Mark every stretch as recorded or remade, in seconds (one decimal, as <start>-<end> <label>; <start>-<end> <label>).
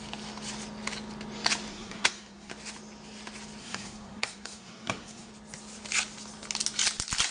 0.0-1.7 recorded; 1.7-2.5 remade; 2.5-3.6 recorded; 3.6-5.3 remade; 5.3-7.3 recorded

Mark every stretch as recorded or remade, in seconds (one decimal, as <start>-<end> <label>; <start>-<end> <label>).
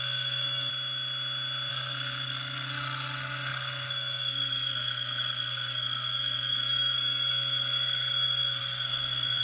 0.0-0.7 remade; 0.7-1.7 recorded; 1.7-9.4 remade